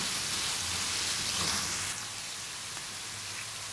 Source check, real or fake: real